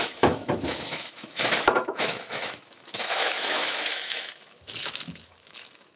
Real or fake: fake